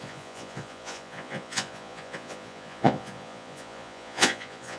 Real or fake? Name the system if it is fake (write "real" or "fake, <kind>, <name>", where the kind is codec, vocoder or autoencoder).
fake, vocoder, Vocos